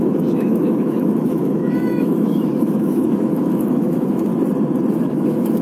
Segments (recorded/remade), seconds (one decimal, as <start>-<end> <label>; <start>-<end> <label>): 0.0-4.3 remade; 4.3-4.9 recorded; 4.9-5.6 remade